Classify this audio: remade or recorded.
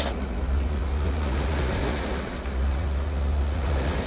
remade